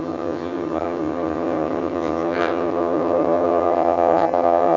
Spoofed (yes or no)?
yes